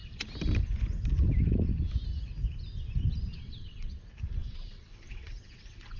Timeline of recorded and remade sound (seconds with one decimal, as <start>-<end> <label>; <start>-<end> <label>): 0.0-3.4 recorded; 3.4-4.0 remade; 4.0-4.4 recorded; 4.4-6.0 remade